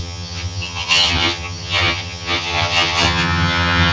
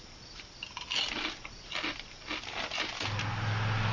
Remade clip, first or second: first